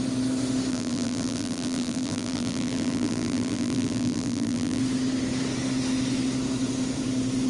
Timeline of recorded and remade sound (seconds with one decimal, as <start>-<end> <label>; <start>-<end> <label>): 0.0-0.7 recorded; 0.7-4.8 remade; 4.8-7.5 recorded